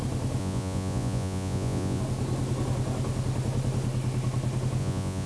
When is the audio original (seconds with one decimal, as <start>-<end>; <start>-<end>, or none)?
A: 0.0-0.4; 2.0-4.8